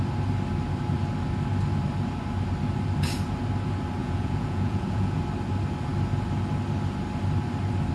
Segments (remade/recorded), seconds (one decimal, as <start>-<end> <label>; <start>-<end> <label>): 0.0-4.0 recorded; 4.0-5.2 remade; 5.2-7.9 recorded